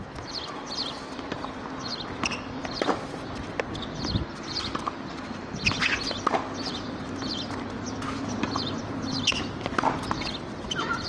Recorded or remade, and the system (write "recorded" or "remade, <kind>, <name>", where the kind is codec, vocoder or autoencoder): recorded